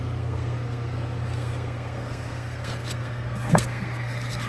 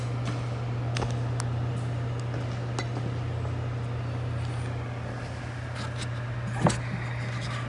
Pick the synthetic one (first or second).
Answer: first